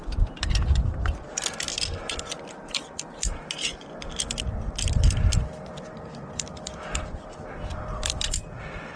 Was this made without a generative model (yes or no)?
no